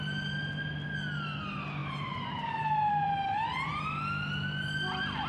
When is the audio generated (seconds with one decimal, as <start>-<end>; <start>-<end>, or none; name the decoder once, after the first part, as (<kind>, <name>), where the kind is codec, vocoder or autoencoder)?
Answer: 1.8-3.8 (vocoder, BigVGAN v2)